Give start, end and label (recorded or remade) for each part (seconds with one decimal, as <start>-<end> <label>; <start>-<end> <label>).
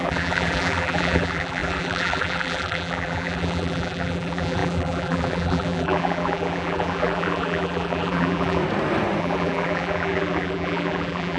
0.0-8.6 remade; 8.6-9.2 recorded; 9.2-11.4 remade